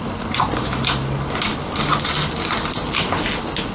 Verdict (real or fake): real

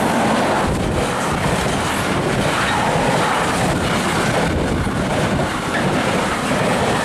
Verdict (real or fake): fake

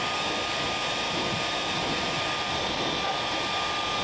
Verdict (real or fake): real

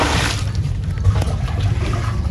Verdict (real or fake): fake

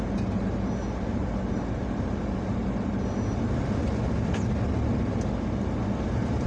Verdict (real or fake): real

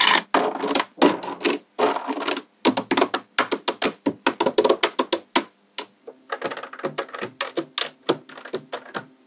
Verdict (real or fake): real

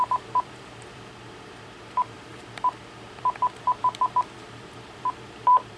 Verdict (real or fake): fake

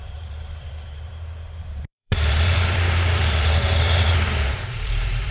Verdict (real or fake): fake